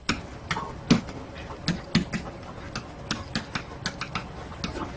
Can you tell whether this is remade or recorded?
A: recorded